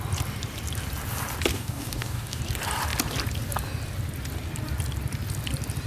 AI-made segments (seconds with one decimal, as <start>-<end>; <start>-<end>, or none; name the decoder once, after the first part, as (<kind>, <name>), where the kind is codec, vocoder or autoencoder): 1.5-2.4 (codec, DAC)